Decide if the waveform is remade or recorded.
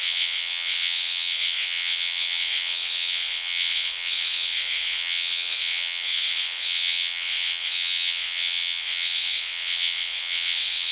remade